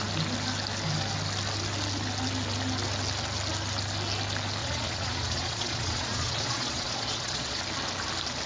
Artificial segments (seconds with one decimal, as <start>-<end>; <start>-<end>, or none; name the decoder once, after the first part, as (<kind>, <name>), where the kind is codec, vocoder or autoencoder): 4.6-7.6 (vocoder, Vocos)